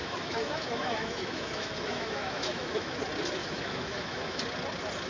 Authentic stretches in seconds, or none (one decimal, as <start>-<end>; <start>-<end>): 3.0-3.4; 4.4-5.1

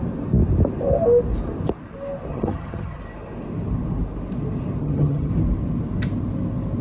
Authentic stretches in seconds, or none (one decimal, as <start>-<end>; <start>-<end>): 0.0-2.3; 3.0-4.8; 5.3-6.8

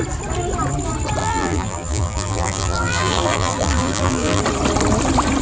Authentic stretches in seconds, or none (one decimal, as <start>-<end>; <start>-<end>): 0.0-1.2; 4.4-5.4

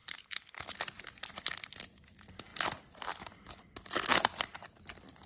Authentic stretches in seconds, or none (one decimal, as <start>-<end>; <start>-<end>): 0.0-5.3

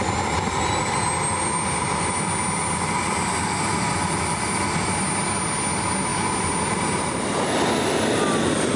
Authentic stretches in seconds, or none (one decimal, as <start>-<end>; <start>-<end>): 0.0-8.8

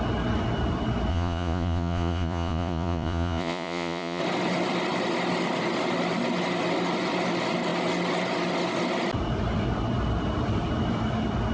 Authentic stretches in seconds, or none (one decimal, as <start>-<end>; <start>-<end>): 0.0-1.1; 4.2-11.5

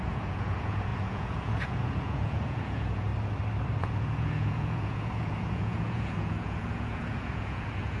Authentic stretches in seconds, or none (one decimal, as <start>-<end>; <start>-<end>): 3.1-3.8